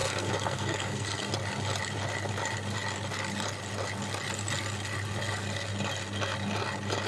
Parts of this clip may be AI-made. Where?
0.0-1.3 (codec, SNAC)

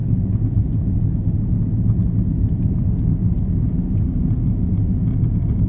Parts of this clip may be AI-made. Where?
none

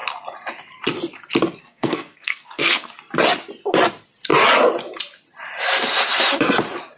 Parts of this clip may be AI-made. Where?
1.6-2.9 (codec, SNAC)

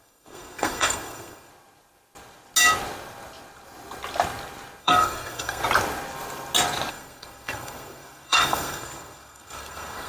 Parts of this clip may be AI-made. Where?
0.0-1.5 (codec, SNAC); 4.8-5.6; 6.9-10.1